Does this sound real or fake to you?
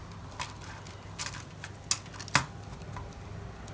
real